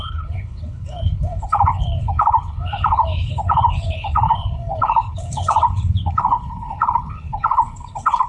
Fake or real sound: fake